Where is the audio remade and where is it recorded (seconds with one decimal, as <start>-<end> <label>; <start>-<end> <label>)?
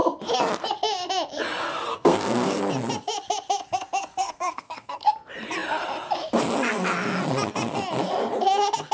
0.0-1.9 recorded; 1.9-2.6 remade; 2.6-4.1 recorded; 4.1-5.1 remade; 5.1-8.9 recorded